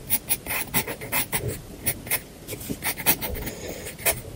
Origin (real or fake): real